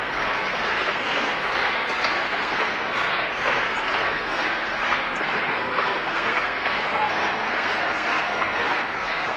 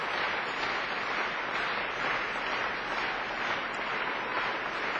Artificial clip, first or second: first